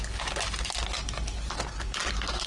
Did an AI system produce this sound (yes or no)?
no